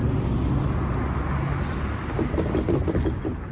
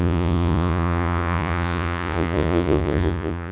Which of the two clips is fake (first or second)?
second